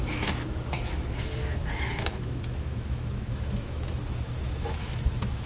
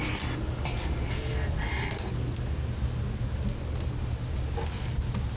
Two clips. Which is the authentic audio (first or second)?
second